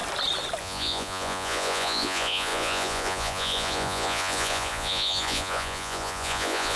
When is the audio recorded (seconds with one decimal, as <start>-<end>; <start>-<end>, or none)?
0.0-0.6